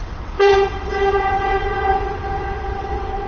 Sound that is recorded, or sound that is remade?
remade